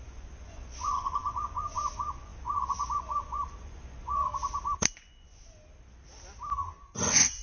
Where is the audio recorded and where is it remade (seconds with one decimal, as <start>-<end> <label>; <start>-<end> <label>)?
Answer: 0.0-4.3 remade; 4.3-5.0 recorded; 5.0-5.4 remade; 5.4-6.8 recorded; 6.8-7.4 remade

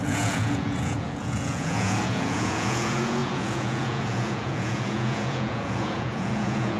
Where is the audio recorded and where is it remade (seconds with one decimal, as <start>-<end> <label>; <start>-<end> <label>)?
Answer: 0.0-6.8 remade

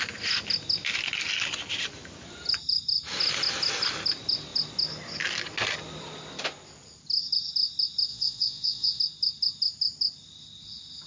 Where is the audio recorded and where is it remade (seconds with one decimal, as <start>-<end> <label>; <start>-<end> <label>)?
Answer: 0.0-8.1 recorded; 8.1-9.0 remade; 9.0-11.1 recorded

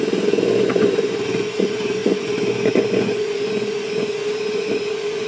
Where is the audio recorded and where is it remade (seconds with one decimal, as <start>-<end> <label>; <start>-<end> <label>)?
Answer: 0.0-5.3 remade

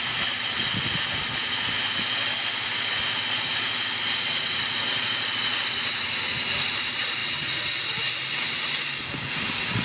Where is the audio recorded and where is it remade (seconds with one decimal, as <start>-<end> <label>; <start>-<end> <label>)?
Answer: 0.0-9.8 recorded

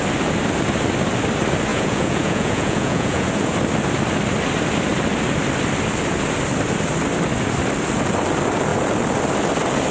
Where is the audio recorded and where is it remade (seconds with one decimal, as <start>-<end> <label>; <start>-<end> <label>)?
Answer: 0.0-1.7 recorded; 1.7-3.3 remade; 3.3-9.9 recorded

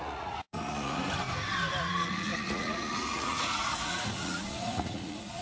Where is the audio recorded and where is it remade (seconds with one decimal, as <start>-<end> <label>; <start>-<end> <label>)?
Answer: 0.0-1.0 remade; 1.0-1.8 recorded; 1.8-5.4 remade

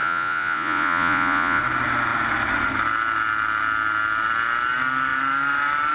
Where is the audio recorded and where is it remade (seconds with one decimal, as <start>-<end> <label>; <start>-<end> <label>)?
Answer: 0.0-1.6 remade; 1.6-5.9 recorded